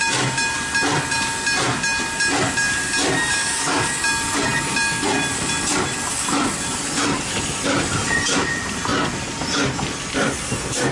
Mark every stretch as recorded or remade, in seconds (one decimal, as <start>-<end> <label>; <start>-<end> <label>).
0.0-3.4 recorded; 3.4-3.9 remade; 3.9-10.9 recorded